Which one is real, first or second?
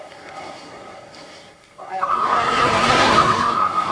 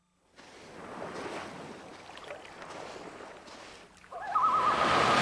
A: second